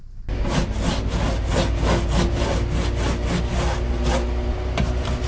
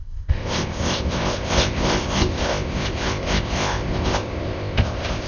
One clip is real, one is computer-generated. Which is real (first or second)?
first